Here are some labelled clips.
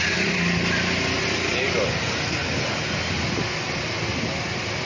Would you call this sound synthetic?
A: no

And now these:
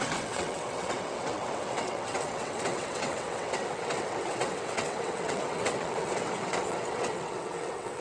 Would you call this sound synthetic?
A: yes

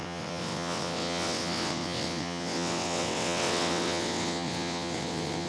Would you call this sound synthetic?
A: yes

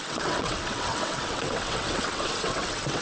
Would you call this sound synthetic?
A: yes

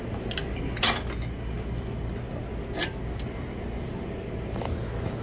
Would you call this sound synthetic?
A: no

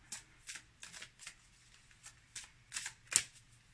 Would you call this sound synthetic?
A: no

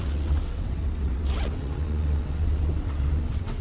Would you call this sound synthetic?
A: yes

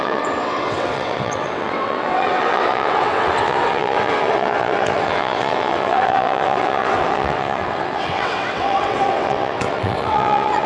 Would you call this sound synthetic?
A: yes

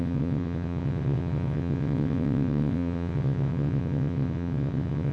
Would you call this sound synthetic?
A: yes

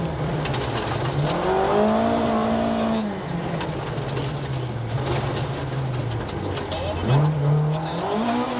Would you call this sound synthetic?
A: no